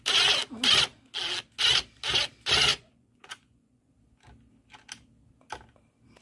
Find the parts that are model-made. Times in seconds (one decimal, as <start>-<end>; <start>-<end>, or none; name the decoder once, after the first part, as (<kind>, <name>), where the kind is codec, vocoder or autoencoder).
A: 2.7-3.9 (vocoder, Vocos)